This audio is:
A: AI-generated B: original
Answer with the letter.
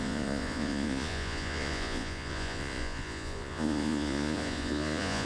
A